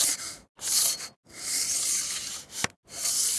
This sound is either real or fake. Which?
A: real